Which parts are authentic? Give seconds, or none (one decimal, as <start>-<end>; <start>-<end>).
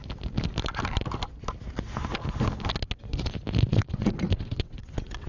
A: 0.0-3.7